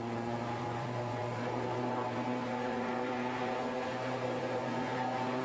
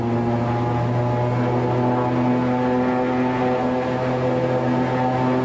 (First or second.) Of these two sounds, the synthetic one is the first